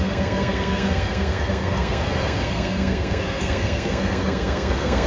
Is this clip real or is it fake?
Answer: fake